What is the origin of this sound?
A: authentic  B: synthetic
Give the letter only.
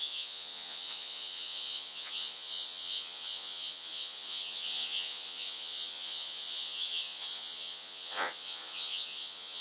B